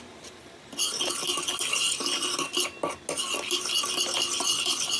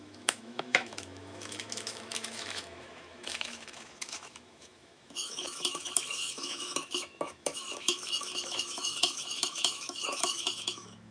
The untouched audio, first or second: first